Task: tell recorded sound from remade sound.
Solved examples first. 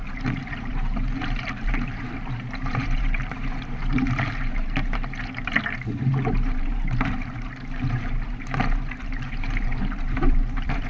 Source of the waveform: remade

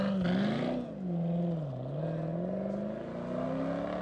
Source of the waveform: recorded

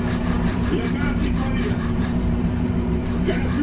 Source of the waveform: remade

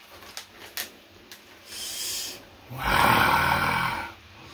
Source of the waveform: recorded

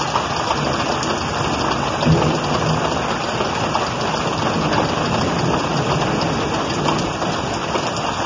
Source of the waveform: recorded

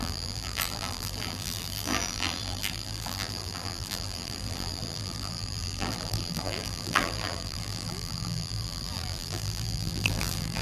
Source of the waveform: remade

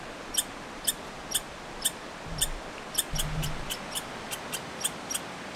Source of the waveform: recorded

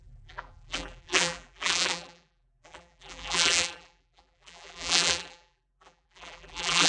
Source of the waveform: remade